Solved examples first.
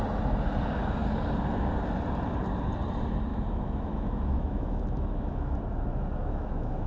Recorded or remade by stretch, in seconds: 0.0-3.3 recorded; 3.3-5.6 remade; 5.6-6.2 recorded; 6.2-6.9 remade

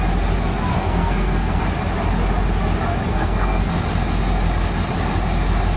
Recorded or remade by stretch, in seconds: 0.0-0.7 recorded; 0.7-1.6 remade; 1.6-3.1 recorded; 3.1-3.7 remade; 3.7-5.8 recorded

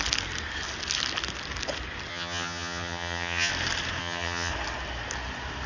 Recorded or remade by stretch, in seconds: 0.0-2.1 recorded; 2.1-3.5 remade; 3.5-4.0 recorded; 4.0-4.5 remade; 4.5-5.7 recorded

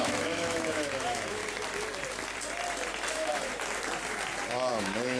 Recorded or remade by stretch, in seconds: 0.0-1.4 remade; 1.4-3.1 recorded; 3.1-3.5 remade; 3.5-4.7 recorded; 4.7-5.2 remade